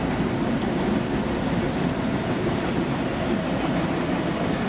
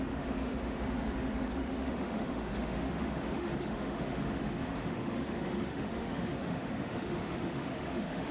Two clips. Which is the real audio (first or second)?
first